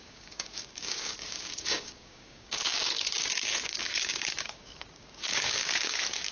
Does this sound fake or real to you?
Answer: fake